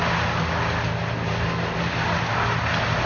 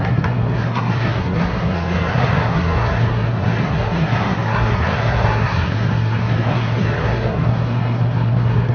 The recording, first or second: first